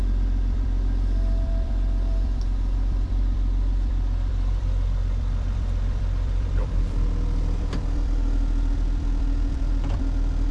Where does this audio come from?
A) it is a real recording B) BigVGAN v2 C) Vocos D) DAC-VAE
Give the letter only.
B